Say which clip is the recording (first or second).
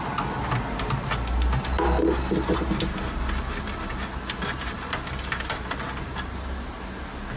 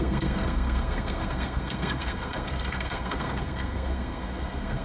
first